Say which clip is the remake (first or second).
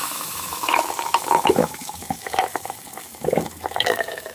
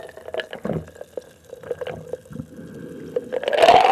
first